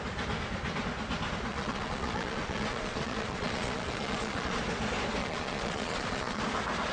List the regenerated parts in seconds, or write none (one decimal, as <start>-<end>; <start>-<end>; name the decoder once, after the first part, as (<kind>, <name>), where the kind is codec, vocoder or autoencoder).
1.5-4.6 (vocoder, Vocos); 5.2-6.4